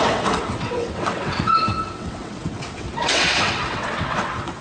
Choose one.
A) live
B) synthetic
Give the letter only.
B